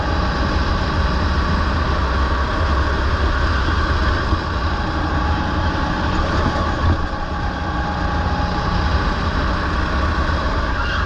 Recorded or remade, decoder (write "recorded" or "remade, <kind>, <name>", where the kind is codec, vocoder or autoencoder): recorded